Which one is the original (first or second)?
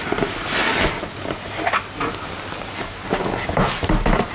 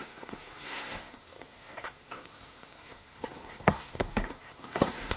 first